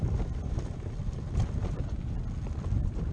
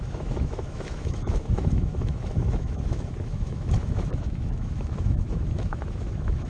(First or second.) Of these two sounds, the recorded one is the first